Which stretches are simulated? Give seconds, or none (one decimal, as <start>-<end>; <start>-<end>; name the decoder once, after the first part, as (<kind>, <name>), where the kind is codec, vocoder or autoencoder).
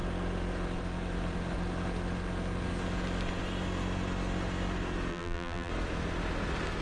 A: 5.1-5.7 (vocoder, BigVGAN v2)